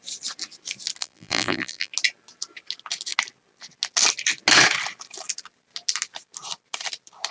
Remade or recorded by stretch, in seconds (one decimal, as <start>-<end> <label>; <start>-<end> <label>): 0.0-1.0 recorded; 1.0-1.9 remade; 1.9-7.3 recorded